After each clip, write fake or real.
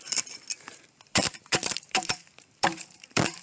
fake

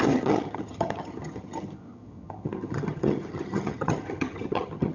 fake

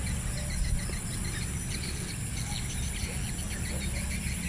real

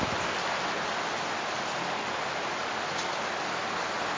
real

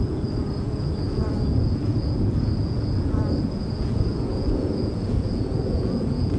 fake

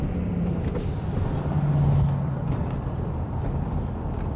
real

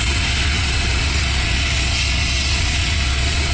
fake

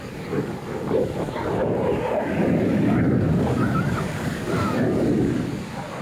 fake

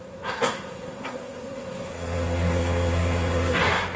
fake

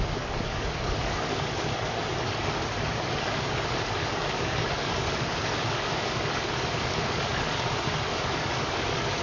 fake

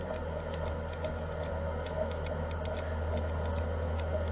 real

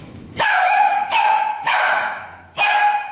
fake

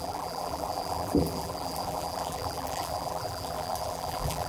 fake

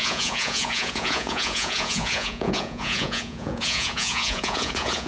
fake